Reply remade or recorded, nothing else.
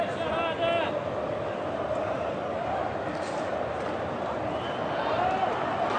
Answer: recorded